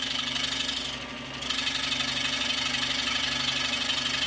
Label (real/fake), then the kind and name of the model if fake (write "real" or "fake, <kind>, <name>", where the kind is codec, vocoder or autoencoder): real